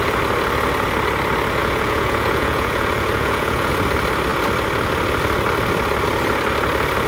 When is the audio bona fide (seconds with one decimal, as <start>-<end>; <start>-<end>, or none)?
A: 0.0-1.6; 3.7-7.1